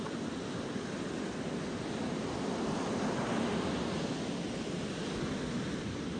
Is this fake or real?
real